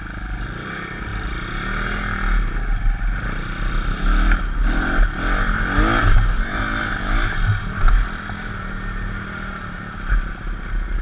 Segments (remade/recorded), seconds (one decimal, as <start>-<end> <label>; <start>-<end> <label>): 0.0-11.0 recorded